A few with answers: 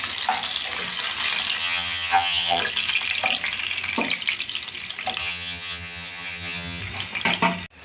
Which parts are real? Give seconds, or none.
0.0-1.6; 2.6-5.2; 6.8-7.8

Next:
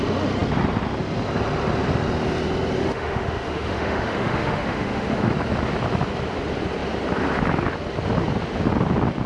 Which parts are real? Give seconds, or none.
0.0-2.8; 5.3-9.3

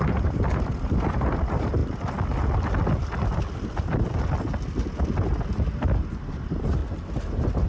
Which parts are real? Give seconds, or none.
1.8-6.3; 6.8-7.3

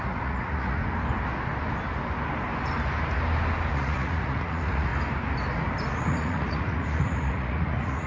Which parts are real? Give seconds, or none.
0.8-3.7; 4.9-5.9

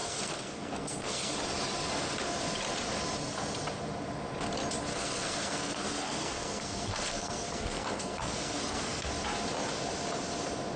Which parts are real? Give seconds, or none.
1.3-4.9; 9.1-10.8

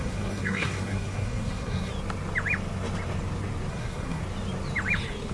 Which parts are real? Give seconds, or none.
1.9-3.7; 4.2-5.3

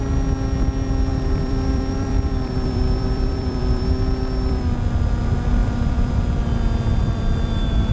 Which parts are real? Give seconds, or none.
0.0-1.1; 4.6-5.6; 6.1-6.9

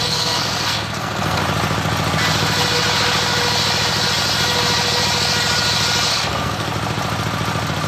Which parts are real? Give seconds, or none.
1.4-6.1; 6.7-7.9